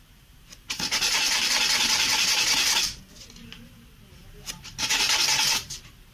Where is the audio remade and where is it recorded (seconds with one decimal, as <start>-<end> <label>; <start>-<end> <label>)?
0.0-6.1 remade